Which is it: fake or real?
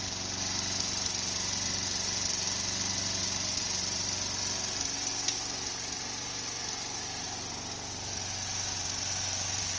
real